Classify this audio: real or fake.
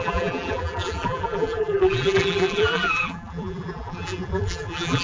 fake